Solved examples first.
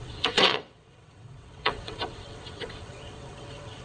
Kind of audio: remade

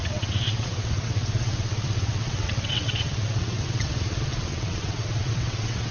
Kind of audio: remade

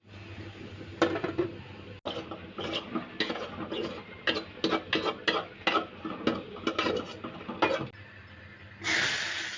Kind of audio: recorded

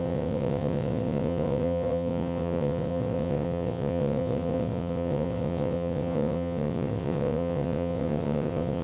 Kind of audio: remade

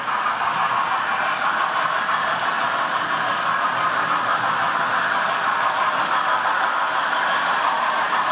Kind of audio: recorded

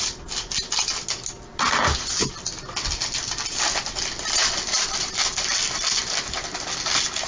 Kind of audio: recorded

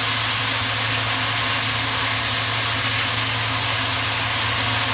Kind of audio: recorded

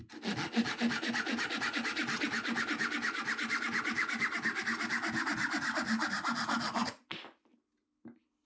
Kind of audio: recorded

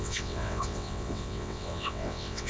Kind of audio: remade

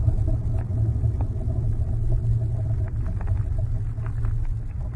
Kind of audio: recorded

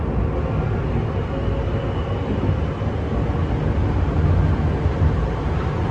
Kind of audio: recorded